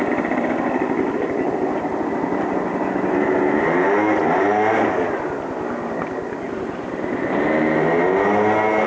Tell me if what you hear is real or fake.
real